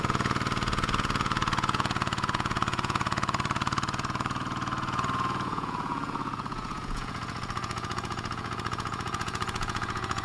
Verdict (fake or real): fake